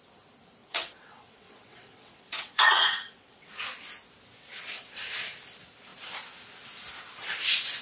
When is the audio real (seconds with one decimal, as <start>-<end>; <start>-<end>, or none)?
0.0-0.6; 3.5-7.8